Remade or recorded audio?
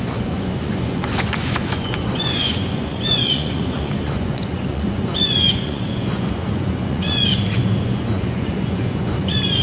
remade